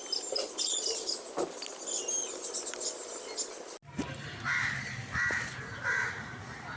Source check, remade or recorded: recorded